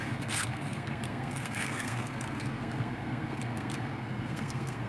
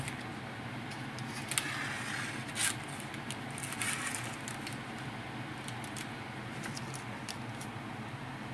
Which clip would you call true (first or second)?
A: second